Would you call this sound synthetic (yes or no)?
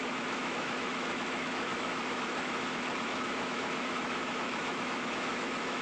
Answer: yes